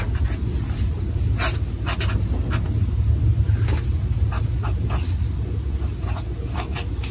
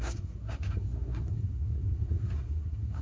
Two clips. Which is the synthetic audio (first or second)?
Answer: second